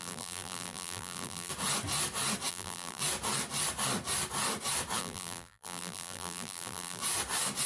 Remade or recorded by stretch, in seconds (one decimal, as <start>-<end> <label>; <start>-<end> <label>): 0.0-1.5 remade; 1.5-2.5 recorded; 2.5-3.0 remade; 3.0-5.0 recorded; 5.0-7.0 remade; 7.0-7.7 recorded